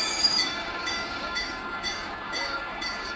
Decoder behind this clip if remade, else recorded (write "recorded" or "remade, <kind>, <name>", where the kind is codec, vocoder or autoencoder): remade, codec, DAC